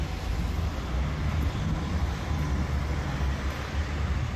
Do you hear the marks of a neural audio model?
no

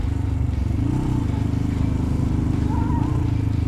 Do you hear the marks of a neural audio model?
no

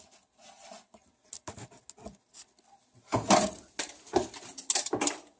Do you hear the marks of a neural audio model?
no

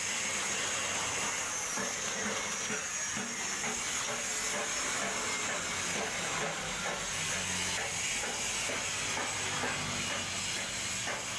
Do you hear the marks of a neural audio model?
no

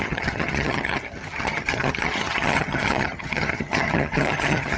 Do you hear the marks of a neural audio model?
yes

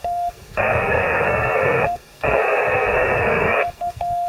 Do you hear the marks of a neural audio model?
yes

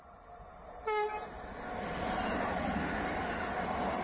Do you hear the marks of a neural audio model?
no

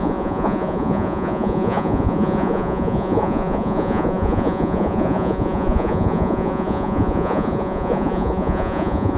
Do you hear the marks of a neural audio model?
yes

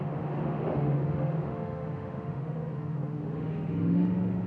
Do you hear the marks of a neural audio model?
yes